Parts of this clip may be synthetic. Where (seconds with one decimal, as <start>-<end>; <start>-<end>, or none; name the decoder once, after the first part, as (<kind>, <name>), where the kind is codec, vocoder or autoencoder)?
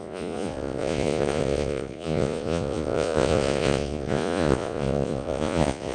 0.0-5.9 (vocoder, Vocos)